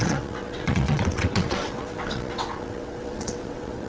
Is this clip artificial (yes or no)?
yes